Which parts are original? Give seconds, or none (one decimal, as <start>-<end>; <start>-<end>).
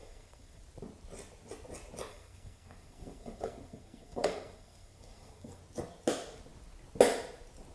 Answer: 0.6-2.1; 5.6-7.7